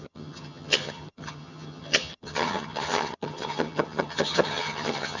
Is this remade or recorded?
remade